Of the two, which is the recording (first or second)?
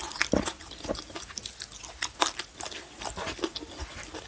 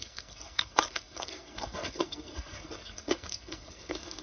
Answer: first